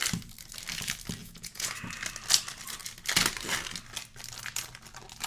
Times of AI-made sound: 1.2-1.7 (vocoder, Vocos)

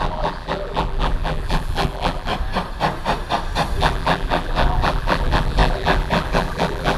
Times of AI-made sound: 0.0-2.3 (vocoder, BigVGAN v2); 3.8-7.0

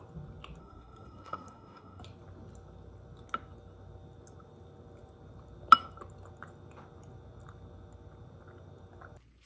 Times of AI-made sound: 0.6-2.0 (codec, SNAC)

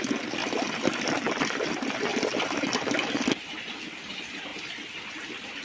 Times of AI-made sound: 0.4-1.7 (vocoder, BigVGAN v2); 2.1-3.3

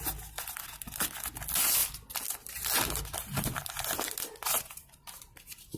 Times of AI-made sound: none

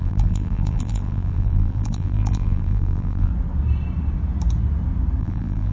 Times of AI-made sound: 0.0-3.3 (vocoder, BigVGAN v2); 5.2-5.7